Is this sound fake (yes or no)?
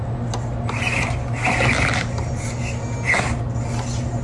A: no